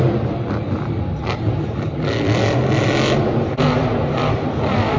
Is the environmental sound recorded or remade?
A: remade